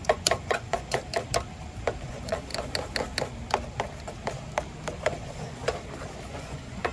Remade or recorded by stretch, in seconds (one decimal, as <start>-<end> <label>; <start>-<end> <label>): 0.0-1.0 remade; 1.0-2.0 recorded; 2.0-2.5 remade; 2.5-5.0 recorded; 5.0-5.6 remade; 5.6-6.3 recorded; 6.3-6.9 remade